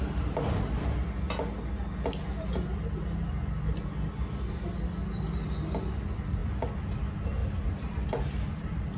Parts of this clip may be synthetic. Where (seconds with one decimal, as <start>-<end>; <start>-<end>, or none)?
6.4-7.0; 7.4-9.0